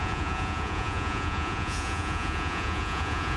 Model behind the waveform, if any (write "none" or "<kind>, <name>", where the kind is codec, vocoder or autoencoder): vocoder, Vocos